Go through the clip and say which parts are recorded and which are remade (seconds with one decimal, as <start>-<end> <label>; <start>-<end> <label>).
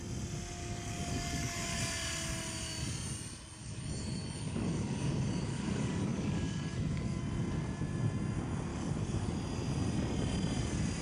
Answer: 0.0-0.6 recorded; 0.6-1.8 remade; 1.8-3.6 recorded; 3.6-7.2 remade; 7.2-8.7 recorded; 8.7-9.4 remade; 9.4-11.0 recorded